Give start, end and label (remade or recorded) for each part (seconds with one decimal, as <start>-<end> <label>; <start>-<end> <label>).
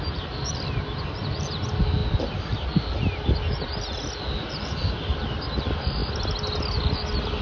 0.0-7.4 recorded